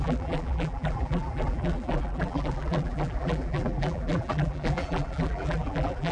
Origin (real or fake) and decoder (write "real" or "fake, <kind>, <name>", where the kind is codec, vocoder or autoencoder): fake, vocoder, BigVGAN v2